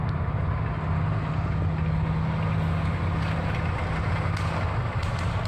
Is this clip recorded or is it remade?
recorded